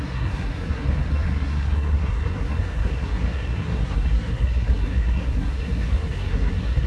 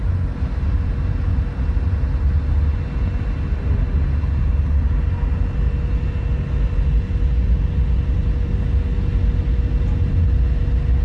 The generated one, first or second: first